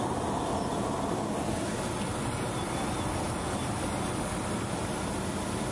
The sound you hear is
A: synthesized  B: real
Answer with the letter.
B